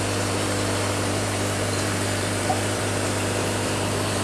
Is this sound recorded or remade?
remade